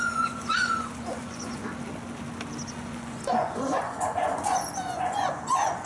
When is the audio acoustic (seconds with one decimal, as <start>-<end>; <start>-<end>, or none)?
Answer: 1.6-2.7

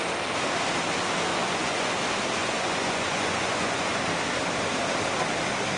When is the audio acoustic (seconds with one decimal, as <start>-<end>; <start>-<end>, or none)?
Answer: 0.0-1.3; 1.9-2.4; 4.0-5.8

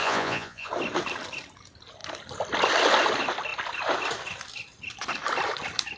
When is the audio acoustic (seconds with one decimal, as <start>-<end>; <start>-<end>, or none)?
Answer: 0.7-6.0

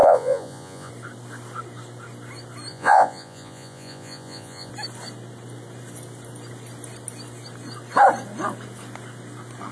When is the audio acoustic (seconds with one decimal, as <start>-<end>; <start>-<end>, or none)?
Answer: 0.9-2.7; 4.7-9.7